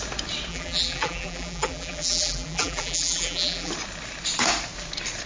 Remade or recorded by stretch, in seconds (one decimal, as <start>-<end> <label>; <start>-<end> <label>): 0.0-0.5 recorded; 0.5-3.7 remade; 3.7-5.3 recorded